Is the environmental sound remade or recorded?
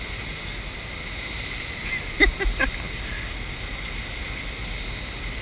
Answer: recorded